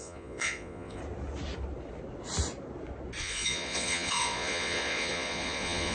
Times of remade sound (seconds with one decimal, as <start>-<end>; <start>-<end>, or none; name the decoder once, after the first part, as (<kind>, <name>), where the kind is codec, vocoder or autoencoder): 0.0-1.0 (vocoder, Vocos); 3.2-5.9